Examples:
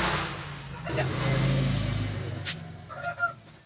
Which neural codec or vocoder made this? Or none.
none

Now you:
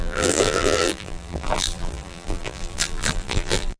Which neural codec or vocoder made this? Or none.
vocoder, BigVGAN v2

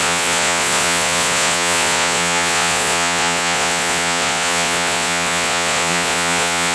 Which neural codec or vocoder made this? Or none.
vocoder, Vocos